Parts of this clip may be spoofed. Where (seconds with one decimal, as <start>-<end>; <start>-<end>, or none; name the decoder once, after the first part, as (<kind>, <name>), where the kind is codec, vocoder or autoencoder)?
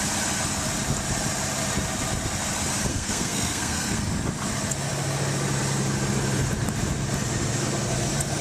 2.9-4.0 (codec, SNAC)